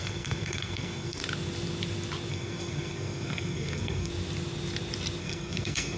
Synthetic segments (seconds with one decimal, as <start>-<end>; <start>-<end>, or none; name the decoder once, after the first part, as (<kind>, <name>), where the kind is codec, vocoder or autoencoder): 0.0-1.2 (codec, SNAC); 2.3-4.1; 5.2-6.0